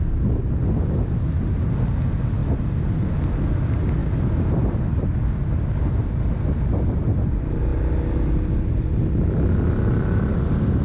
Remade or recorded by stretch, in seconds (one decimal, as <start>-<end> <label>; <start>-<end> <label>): 0.0-10.8 recorded